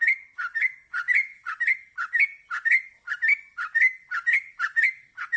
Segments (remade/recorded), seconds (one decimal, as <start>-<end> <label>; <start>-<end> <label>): 0.0-0.9 recorded; 0.9-1.5 remade; 1.5-5.4 recorded